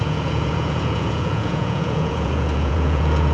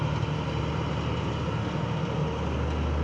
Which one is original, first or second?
second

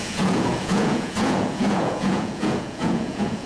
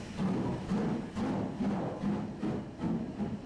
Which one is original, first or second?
second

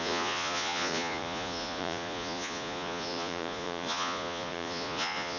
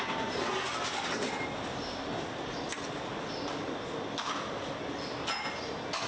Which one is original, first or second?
second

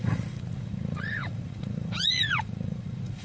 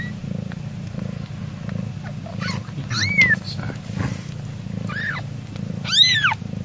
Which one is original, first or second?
second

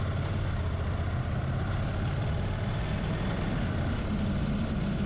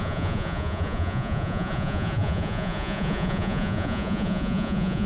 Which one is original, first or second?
first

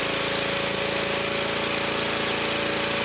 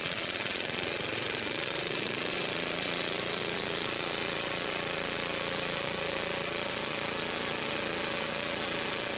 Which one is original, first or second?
first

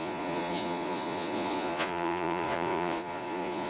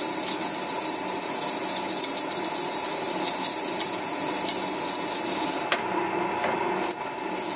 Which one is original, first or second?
second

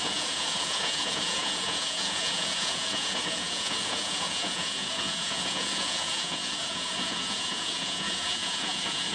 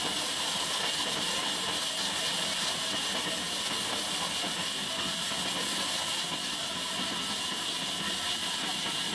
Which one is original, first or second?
second